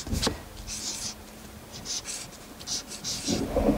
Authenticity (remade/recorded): recorded